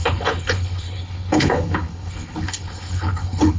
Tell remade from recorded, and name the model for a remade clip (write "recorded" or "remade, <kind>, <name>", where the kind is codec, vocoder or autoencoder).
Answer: remade, codec, HILCodec